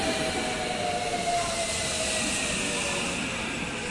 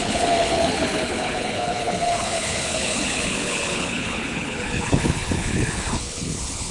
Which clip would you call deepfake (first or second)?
second